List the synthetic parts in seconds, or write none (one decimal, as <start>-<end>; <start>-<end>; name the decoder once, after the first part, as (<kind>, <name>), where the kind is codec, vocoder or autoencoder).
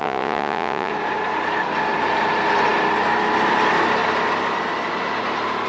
0.0-0.9 (vocoder, Vocos)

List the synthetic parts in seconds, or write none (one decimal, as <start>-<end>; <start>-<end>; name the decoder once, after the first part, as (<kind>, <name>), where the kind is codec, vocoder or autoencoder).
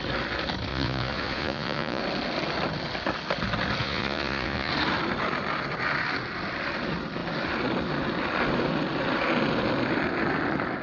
0.7-2.0 (vocoder, Vocos); 3.8-4.7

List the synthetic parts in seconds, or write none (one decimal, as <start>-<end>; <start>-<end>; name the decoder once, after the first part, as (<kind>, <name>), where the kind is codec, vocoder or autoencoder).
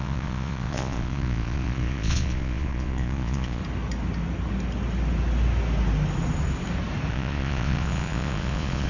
0.0-3.6 (vocoder, Vocos); 7.1-8.9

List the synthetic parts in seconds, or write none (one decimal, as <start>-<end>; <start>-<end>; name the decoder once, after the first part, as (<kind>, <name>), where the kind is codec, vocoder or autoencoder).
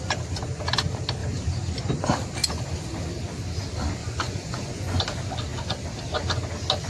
4.0-5.0 (vocoder, Vocos)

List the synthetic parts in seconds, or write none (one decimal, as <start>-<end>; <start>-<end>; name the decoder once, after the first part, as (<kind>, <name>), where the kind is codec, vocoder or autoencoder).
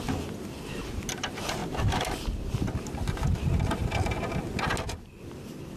none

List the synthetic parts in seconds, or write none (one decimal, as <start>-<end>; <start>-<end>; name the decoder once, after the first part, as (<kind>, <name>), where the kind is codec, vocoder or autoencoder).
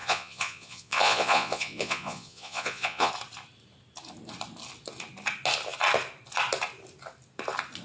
0.0-3.1 (vocoder, Vocos)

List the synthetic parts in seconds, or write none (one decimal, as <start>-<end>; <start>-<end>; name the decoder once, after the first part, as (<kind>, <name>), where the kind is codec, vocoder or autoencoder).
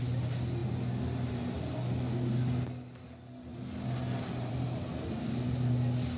none